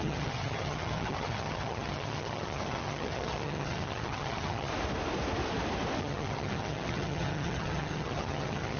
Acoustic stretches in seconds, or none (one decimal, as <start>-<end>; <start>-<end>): 4.7-6.0